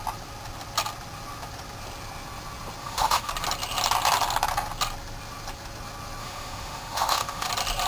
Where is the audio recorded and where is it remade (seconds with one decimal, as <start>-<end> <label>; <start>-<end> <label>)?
0.0-2.8 recorded; 2.8-3.3 remade; 3.3-6.2 recorded; 6.2-7.5 remade; 7.5-7.9 recorded